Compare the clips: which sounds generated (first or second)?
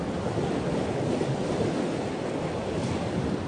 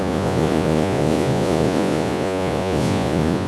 second